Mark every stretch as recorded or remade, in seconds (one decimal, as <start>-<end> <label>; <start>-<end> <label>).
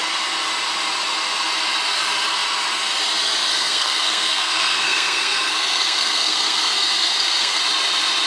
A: 0.0-3.5 recorded; 3.5-7.6 remade; 7.6-8.3 recorded